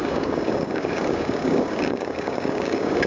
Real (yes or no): no